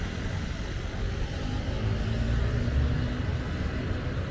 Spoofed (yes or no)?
no